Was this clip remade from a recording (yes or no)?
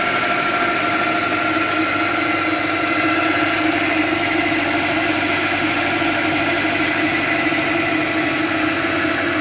no